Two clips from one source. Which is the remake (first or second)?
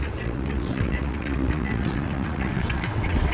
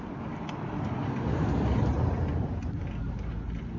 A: first